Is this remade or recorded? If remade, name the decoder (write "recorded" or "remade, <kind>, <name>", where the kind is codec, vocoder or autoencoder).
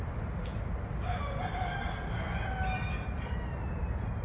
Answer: recorded